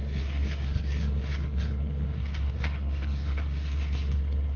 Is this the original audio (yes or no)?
no